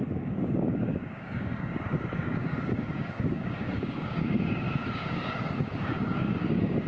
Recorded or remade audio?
remade